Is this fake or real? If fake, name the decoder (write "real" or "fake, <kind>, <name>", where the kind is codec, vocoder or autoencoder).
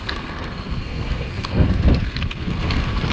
fake, codec, SNAC